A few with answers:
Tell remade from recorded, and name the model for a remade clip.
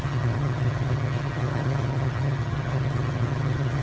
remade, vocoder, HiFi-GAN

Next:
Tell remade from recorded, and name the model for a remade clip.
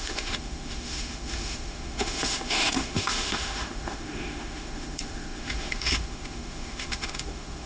remade, autoencoder, DAC-VAE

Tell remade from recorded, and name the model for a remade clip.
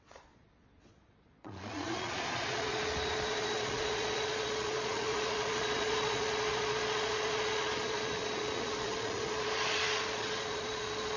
remade, vocoder, Vocos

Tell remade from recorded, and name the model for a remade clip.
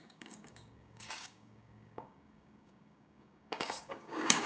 remade, codec, DAC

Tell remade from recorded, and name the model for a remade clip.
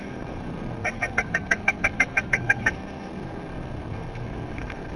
remade, codec, SNAC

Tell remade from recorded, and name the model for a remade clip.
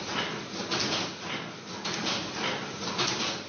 recorded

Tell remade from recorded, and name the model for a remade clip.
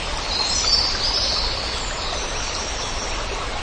recorded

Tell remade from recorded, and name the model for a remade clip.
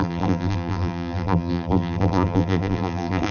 remade, vocoder, BigVGAN v2